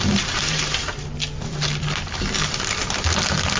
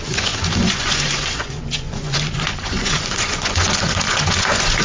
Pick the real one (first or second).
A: first